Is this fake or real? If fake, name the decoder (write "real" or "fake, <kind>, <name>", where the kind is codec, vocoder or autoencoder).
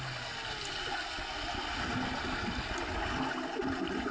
real